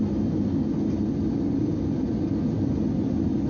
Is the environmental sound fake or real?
real